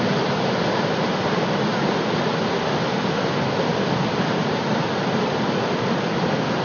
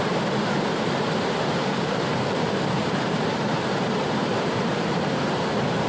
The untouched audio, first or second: first